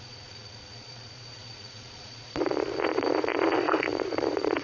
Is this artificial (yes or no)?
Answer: yes